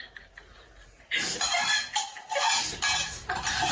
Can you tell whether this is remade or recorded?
recorded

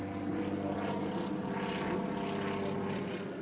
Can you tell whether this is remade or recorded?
recorded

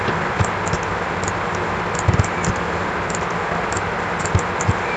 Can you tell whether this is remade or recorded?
recorded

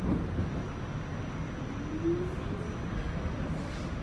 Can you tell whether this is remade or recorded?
recorded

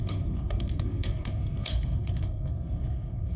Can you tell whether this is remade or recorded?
remade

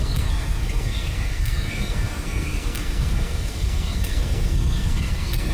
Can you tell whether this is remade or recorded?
remade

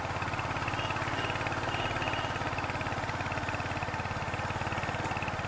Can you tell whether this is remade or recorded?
recorded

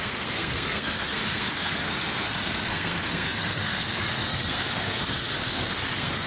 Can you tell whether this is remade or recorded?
remade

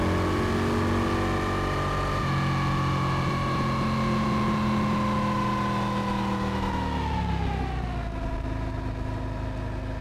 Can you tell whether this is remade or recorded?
recorded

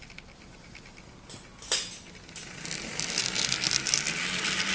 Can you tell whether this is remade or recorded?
recorded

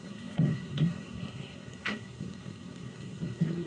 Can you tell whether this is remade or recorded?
remade